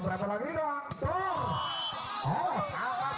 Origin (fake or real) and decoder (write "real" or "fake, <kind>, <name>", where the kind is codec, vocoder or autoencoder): real